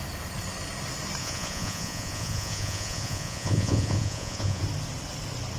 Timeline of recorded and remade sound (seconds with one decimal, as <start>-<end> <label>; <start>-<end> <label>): 0.0-1.2 recorded; 1.2-4.6 remade; 4.6-5.6 recorded